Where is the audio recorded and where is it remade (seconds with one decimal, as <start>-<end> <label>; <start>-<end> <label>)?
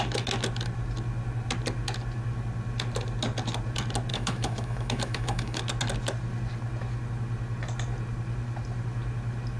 0.0-4.1 recorded; 4.1-5.6 remade; 5.6-9.6 recorded